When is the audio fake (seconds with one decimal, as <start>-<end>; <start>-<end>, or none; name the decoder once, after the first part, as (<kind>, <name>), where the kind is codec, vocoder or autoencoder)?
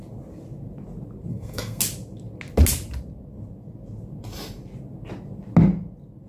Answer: 1.3-1.8 (codec, SNAC)